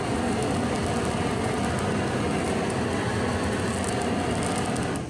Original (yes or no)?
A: yes